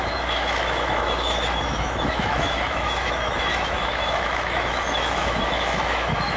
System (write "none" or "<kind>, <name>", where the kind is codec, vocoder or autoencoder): autoencoder, DAC-VAE